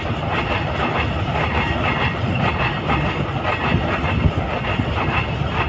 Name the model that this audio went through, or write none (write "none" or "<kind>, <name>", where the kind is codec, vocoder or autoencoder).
none